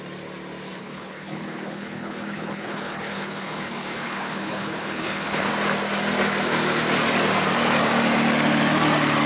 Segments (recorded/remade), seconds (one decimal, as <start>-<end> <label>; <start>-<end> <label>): 0.0-0.7 recorded; 0.7-5.5 remade; 5.5-9.3 recorded